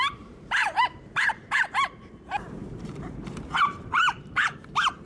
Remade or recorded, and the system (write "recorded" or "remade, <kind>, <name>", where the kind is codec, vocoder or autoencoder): remade, vocoder, BigVGAN v2